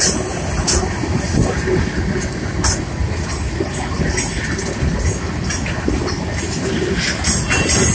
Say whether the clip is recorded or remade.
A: recorded